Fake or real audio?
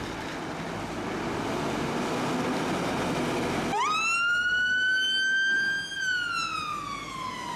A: real